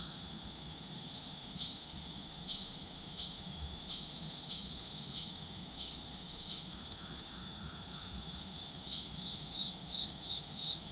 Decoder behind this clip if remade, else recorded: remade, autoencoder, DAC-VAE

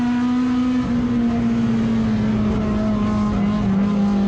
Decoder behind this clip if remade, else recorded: recorded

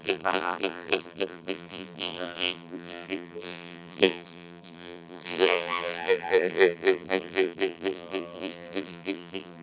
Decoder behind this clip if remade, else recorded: remade, vocoder, BigVGAN v2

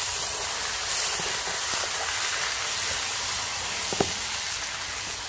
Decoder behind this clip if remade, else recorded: recorded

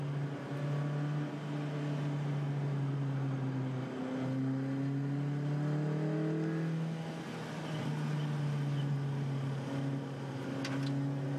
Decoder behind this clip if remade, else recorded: recorded